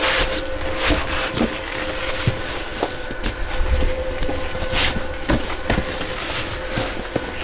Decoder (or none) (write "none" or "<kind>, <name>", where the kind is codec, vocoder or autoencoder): none